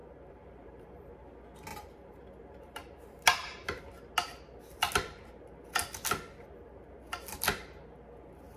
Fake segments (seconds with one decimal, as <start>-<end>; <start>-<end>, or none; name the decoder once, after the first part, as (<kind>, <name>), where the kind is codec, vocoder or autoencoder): 0.0-1.1 (vocoder, BigVGAN v2); 1.7-3.8